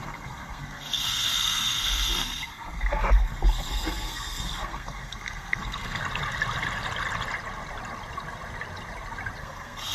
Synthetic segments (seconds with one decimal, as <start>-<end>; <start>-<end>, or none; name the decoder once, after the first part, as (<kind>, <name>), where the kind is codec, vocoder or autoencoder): 0.0-6.0 (codec, SNAC); 9.4-9.9